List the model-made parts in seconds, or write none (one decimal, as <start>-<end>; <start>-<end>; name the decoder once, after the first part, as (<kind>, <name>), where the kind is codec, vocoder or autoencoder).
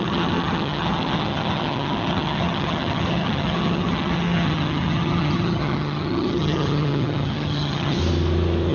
0.0-8.0 (vocoder, HiFi-GAN)